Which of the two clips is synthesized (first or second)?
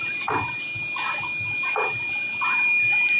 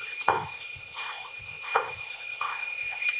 second